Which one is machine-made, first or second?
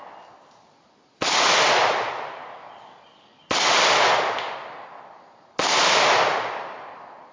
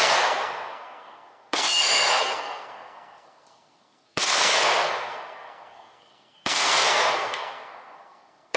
second